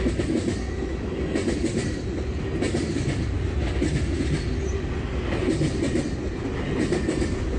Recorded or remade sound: recorded